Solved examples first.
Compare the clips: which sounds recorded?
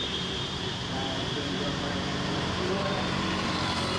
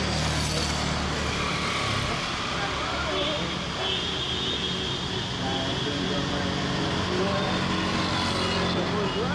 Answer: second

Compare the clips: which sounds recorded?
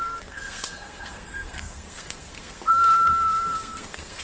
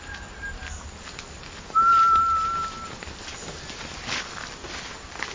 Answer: second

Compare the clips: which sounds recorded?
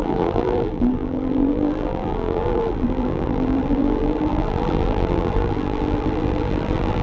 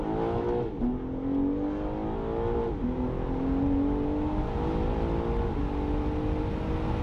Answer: second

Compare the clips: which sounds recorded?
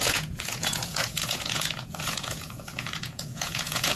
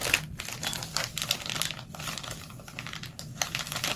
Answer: second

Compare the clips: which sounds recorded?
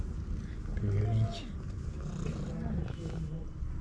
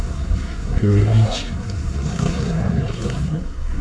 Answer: first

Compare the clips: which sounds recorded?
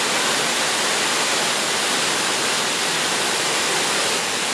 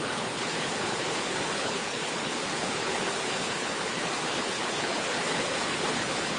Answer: first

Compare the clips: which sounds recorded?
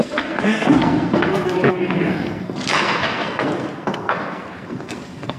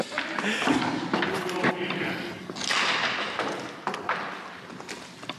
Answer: second